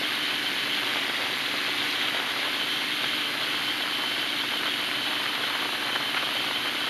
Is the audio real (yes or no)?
yes